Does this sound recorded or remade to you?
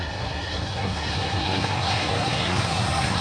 remade